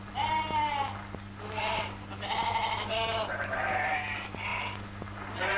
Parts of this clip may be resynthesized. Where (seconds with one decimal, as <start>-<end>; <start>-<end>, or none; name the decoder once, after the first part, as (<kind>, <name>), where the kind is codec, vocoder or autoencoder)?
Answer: none